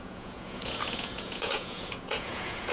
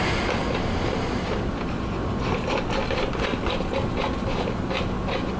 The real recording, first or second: second